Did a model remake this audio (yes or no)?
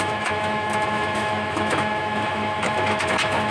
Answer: yes